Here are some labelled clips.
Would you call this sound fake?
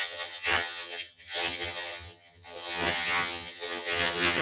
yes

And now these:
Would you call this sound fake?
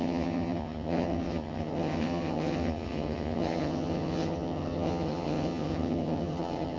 yes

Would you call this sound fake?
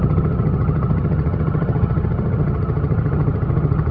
yes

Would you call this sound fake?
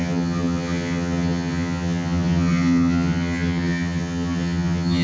yes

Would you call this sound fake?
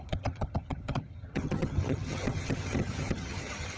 yes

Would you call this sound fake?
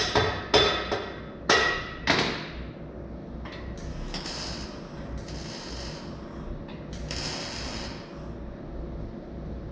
no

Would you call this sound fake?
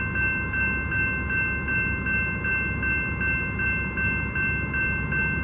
no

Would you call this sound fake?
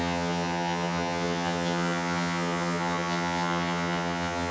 yes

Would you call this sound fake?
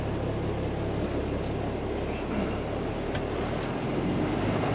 no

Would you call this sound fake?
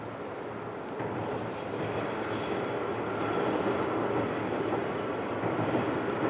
no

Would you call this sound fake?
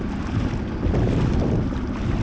no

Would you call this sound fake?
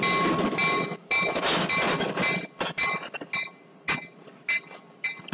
no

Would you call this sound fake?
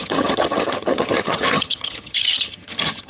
yes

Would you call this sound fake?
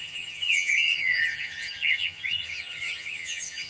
yes